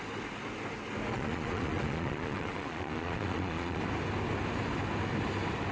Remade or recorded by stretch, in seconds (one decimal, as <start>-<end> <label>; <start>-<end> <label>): 0.0-1.1 recorded; 1.1-3.8 remade; 3.8-5.7 recorded